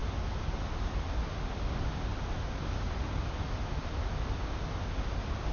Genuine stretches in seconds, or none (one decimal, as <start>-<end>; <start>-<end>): 0.0-5.5